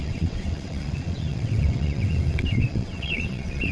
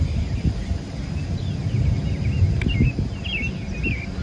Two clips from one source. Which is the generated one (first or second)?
first